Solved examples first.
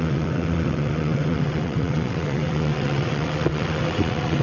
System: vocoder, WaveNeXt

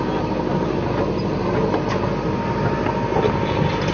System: none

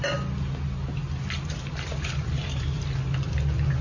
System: none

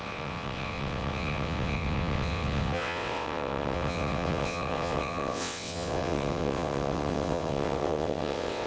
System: vocoder, WaveNeXt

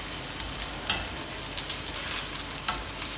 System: none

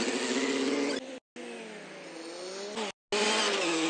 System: none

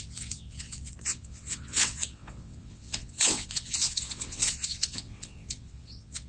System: vocoder, WaveNeXt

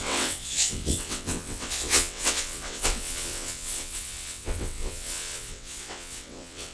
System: vocoder, WaveNeXt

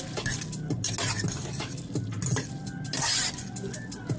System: none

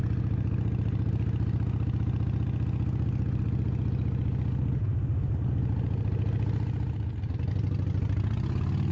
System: none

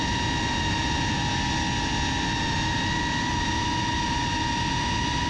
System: none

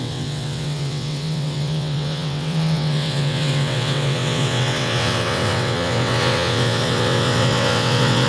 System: vocoder, WaveNeXt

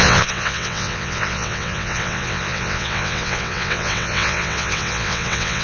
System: vocoder, WaveNeXt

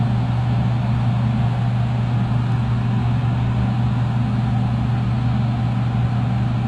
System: none